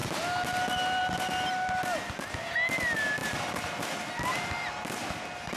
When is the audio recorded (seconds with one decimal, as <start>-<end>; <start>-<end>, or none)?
0.0-5.6